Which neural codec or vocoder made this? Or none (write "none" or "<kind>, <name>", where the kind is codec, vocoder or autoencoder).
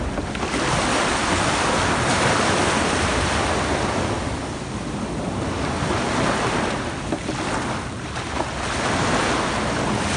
none